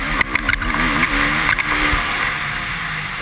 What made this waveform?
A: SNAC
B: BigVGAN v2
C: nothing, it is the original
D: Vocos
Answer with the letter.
C